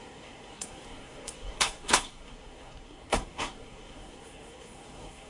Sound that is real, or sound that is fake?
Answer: fake